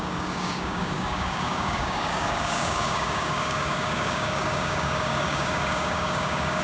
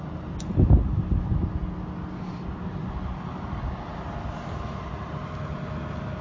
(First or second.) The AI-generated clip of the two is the first